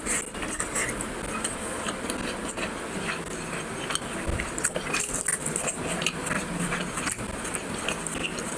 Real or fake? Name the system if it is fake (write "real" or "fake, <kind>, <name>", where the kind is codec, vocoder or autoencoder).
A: real